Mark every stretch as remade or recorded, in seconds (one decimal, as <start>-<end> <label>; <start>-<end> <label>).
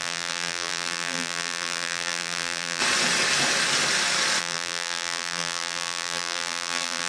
0.0-2.8 remade; 2.8-4.4 recorded; 4.4-7.1 remade